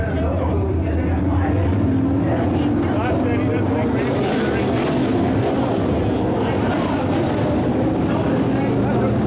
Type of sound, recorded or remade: recorded